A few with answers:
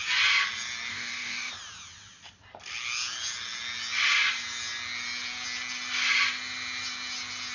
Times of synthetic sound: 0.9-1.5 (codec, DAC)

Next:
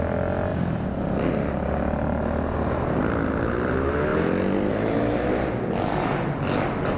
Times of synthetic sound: none

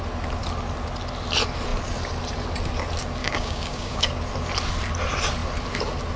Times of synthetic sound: 3.2-4.0 (codec, DAC)

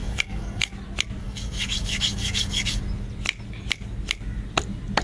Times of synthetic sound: 0.0-0.7 (codec, DAC); 1.2-2.8

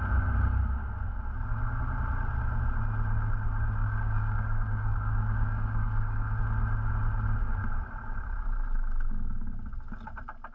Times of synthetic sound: 3.8-6.4 (codec, DAC)

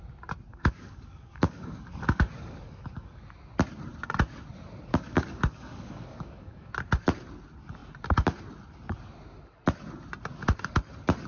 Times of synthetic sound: 0.5-3.2 (codec, DAC); 4.9-6.7